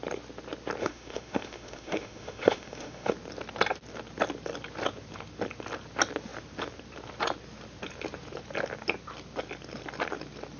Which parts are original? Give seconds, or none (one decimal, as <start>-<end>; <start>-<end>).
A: 0.0-0.8; 3.1-10.6